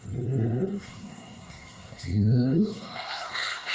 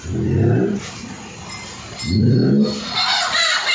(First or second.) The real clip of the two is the second